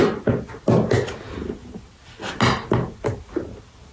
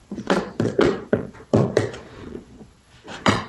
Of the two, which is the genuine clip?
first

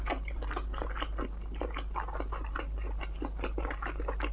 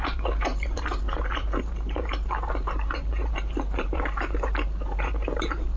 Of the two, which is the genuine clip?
first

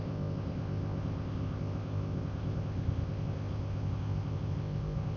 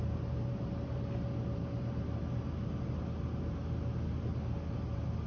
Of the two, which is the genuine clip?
second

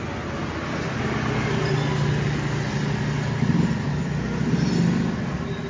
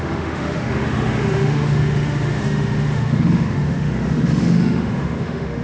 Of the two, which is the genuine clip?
first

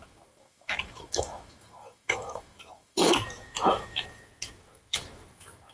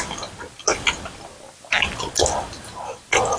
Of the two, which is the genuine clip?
second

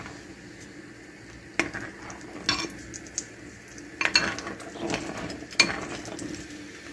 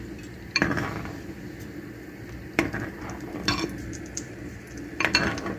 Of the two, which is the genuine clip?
first